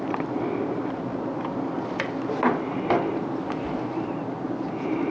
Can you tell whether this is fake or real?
real